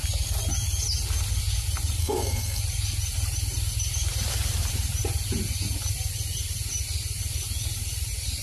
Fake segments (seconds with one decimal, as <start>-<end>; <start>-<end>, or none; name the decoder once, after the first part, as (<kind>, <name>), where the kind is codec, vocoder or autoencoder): 2.0-2.6 (codec, SNAC)